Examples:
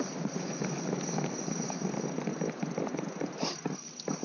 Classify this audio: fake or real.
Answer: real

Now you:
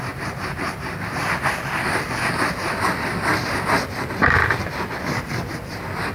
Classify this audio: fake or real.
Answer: real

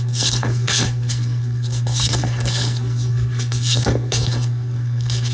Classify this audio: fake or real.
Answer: fake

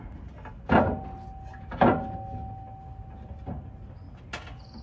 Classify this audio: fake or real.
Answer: real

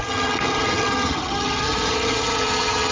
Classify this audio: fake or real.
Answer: fake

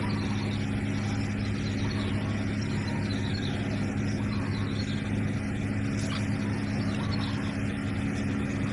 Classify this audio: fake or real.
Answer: real